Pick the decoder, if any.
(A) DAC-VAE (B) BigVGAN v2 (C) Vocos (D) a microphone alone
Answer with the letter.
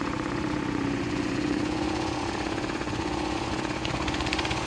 C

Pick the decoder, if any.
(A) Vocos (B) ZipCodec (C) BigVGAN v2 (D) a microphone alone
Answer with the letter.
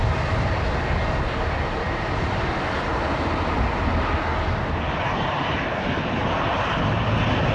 D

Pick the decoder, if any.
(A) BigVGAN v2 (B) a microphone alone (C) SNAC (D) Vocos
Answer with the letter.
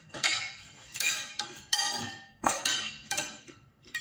C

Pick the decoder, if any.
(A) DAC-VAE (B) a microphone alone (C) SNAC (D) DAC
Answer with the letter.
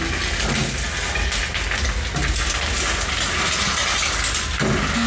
B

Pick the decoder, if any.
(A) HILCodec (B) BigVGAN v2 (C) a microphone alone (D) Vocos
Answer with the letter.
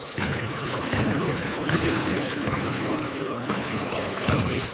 A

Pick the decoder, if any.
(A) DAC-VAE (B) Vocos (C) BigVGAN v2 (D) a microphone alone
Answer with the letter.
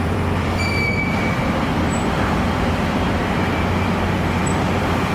C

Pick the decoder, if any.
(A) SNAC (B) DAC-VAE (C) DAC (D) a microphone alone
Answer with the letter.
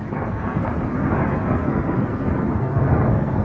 A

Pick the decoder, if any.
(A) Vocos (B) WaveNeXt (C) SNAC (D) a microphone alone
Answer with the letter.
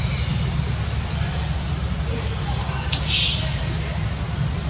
D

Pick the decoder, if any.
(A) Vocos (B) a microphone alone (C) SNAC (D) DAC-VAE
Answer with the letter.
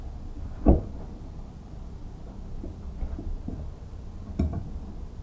B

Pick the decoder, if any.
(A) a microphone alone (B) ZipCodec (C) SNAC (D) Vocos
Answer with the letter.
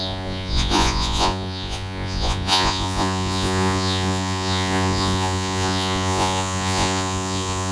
D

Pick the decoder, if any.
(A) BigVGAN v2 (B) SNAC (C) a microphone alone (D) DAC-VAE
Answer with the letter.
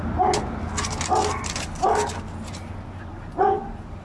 C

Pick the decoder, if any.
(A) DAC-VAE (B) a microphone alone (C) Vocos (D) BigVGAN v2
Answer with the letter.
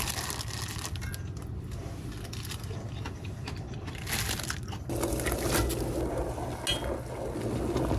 B